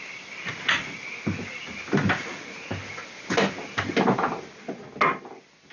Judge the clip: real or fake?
real